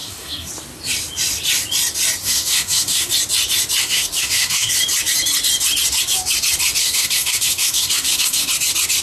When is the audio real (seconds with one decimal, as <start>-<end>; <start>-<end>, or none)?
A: 0.5-2.2; 3.1-3.8; 4.7-6.8; 8.5-9.0